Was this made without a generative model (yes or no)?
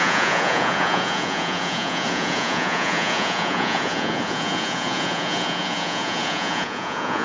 no